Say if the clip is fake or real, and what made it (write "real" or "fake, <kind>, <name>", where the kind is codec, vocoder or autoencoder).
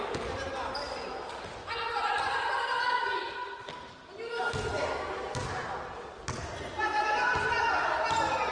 real